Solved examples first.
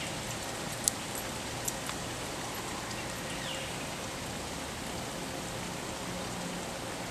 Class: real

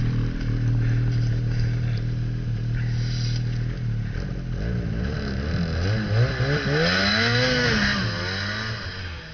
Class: real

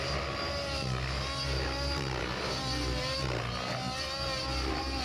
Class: real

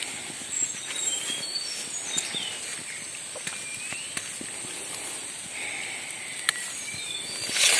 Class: real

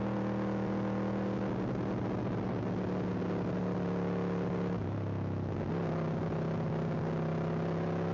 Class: real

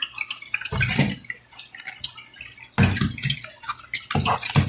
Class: real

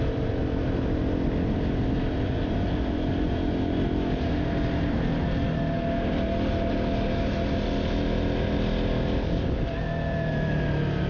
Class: real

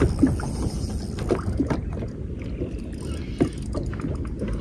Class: real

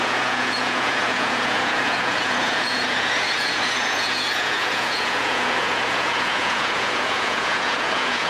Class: fake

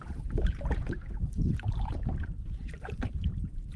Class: fake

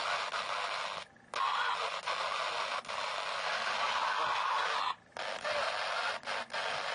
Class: real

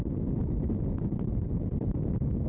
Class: real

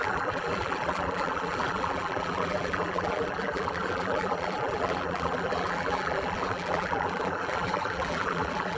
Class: fake